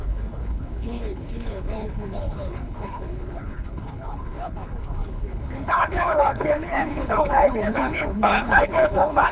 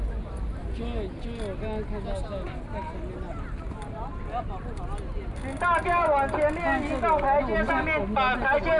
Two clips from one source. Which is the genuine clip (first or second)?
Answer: second